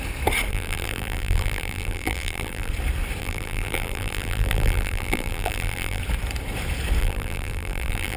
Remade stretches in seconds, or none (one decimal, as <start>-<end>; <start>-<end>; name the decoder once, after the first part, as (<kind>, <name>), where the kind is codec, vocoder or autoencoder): 0.5-2.7 (vocoder, BigVGAN v2); 3.2-6.0; 7.0-8.2